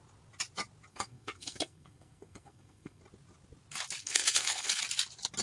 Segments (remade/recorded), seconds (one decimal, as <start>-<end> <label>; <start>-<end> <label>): 0.0-0.9 recorded; 0.9-3.0 remade; 3.0-4.0 recorded; 4.0-4.8 remade; 4.8-5.4 recorded